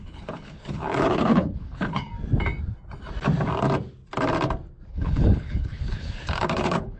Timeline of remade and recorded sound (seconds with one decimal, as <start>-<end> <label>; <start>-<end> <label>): 0.0-2.1 remade; 2.1-4.9 recorded; 4.9-7.0 remade